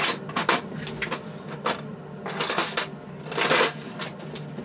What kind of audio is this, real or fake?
real